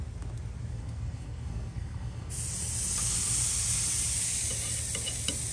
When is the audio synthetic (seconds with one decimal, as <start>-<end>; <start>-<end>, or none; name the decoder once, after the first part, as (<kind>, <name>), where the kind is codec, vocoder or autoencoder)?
0.7-2.3 (codec, SNAC)